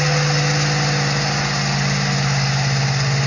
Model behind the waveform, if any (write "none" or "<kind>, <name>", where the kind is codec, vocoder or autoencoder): none